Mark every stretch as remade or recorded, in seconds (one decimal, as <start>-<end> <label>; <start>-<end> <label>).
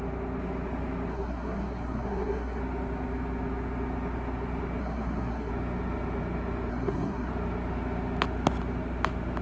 0.0-1.1 recorded; 1.1-2.6 remade; 2.6-4.8 recorded; 4.8-5.5 remade; 5.5-6.7 recorded; 6.7-7.3 remade; 7.3-9.4 recorded